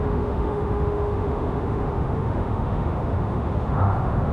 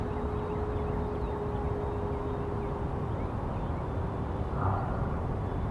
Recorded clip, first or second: second